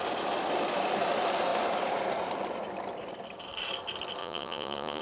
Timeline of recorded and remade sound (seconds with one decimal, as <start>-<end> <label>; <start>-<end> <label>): 0.0-4.2 recorded; 4.2-5.0 remade